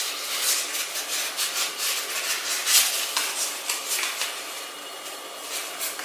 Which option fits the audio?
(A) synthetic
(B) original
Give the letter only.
B